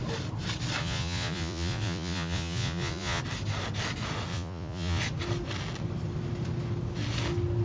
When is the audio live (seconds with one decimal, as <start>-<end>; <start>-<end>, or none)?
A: 0.0-0.8; 3.2-4.3; 5.0-7.6